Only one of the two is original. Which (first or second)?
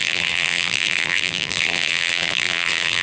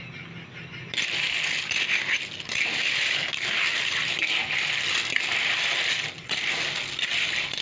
second